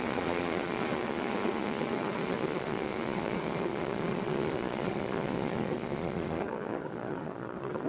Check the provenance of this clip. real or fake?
fake